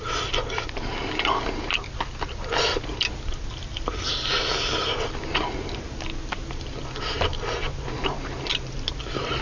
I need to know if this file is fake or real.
real